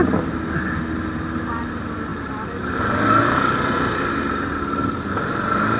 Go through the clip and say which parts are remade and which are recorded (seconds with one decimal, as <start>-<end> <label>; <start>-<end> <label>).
0.0-5.8 recorded